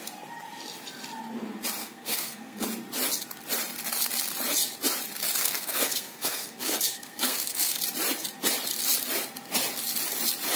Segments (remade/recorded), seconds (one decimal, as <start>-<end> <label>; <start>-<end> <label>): 0.0-1.8 recorded; 1.8-2.6 remade; 2.6-5.4 recorded; 5.4-7.8 remade; 7.8-10.6 recorded